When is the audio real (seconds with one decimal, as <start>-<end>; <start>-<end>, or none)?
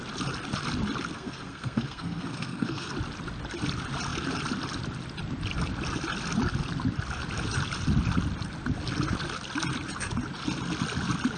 0.0-1.1; 2.9-11.4